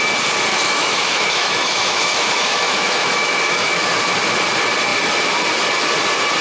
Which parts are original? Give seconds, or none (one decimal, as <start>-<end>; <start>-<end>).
0.0-0.5; 3.8-6.4